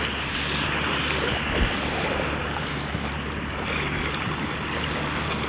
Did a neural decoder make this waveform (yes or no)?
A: no